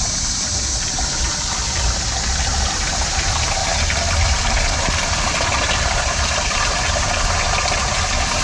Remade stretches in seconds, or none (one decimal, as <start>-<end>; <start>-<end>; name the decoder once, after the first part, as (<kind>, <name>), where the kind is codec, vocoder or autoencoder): 3.6-4.4 (vocoder, BigVGAN v2); 5.5-7.2